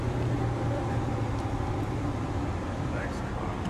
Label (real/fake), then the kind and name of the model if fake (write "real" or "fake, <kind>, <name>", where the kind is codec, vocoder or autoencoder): real